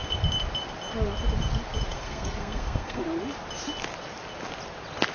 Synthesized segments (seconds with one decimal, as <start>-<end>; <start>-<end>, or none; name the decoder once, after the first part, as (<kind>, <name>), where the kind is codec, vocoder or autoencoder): 1.9-3.0 (codec, SNAC)